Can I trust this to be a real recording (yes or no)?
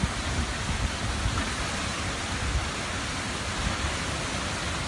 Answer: yes